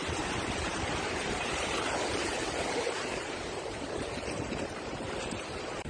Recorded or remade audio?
remade